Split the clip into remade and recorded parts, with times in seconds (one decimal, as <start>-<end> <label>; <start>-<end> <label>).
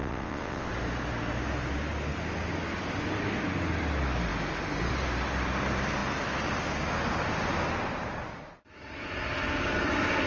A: 0.0-0.7 remade; 0.7-10.3 recorded